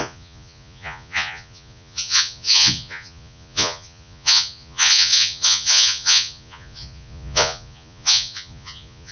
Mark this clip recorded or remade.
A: remade